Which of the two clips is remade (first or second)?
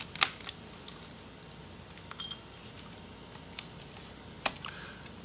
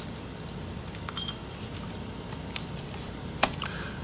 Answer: second